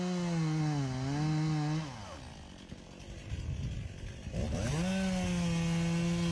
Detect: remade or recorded recorded